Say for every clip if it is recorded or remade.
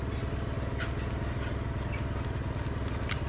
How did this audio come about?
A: recorded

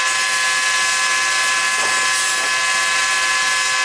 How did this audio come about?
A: recorded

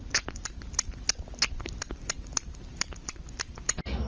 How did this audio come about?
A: recorded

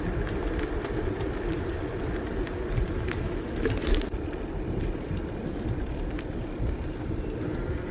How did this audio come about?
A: remade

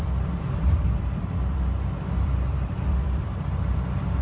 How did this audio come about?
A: remade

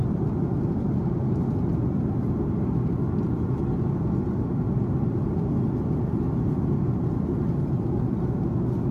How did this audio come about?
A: recorded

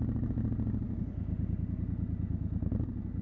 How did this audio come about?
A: recorded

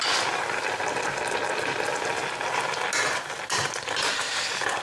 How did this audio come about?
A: recorded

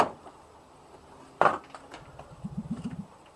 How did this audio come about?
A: recorded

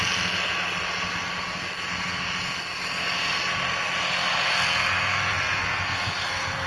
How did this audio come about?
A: recorded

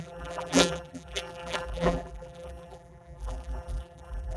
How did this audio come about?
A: remade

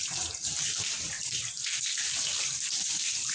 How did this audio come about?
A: remade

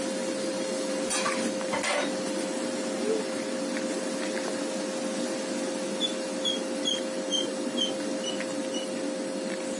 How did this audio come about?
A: recorded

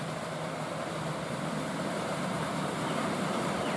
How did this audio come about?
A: remade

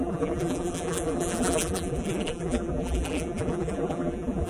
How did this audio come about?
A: remade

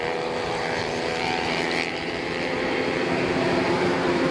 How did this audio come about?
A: remade